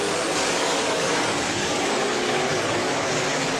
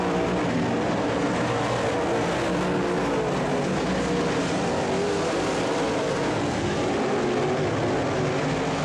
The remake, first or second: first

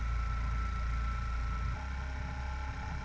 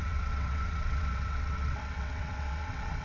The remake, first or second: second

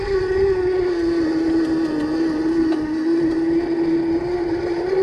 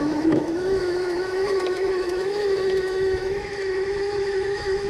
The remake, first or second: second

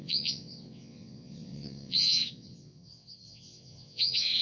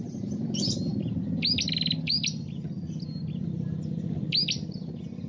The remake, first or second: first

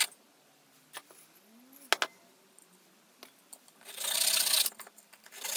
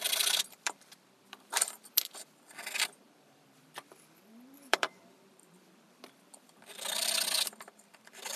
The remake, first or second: second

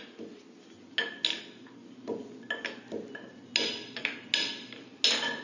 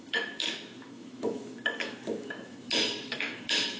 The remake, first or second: second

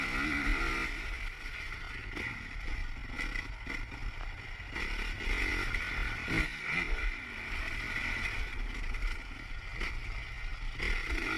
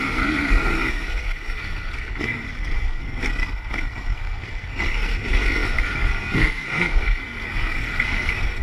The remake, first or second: second